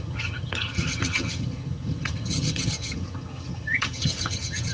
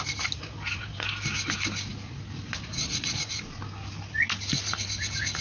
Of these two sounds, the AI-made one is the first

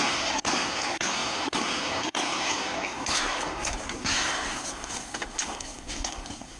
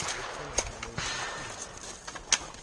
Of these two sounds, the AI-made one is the first